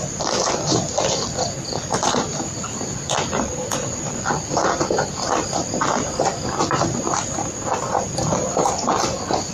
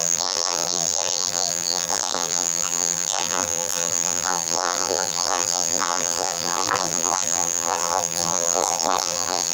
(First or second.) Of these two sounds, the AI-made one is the second